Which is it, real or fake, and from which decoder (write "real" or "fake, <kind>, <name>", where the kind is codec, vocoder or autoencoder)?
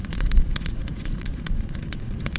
fake, vocoder, Vocos